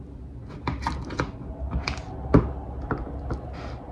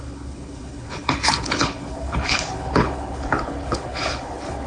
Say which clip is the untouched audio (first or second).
first